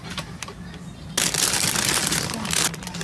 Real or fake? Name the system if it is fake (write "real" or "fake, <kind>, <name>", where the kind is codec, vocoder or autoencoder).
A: real